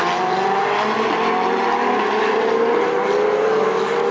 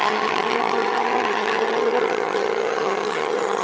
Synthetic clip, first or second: second